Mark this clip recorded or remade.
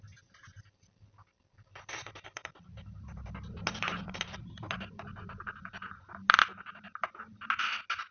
recorded